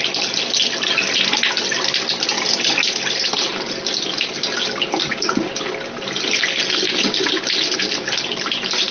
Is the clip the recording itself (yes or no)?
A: yes